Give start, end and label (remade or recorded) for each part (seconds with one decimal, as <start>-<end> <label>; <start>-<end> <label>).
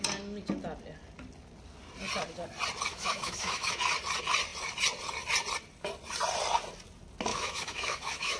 0.0-2.9 recorded; 2.9-3.8 remade; 3.8-7.3 recorded; 7.3-8.4 remade